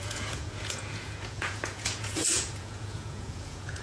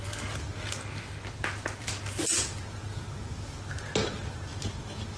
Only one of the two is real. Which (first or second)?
second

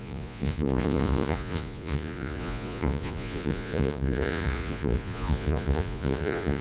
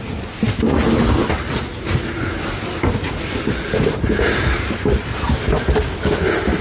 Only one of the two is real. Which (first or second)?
second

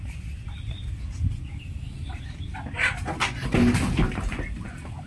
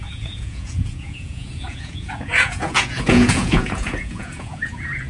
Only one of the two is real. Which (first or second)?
first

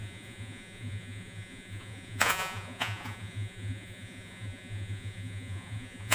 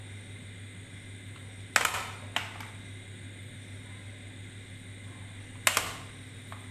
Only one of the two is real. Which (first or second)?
second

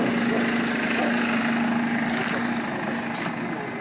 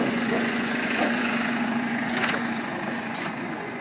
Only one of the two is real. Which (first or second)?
first